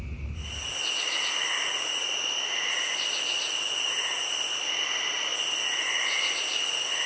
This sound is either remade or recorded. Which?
recorded